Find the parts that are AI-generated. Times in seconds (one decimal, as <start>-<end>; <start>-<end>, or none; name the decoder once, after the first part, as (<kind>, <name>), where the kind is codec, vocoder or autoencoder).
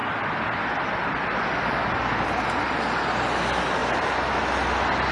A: none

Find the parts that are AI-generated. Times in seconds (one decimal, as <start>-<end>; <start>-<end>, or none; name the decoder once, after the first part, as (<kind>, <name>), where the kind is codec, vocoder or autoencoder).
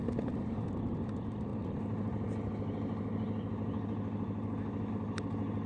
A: none